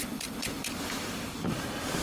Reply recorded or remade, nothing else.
remade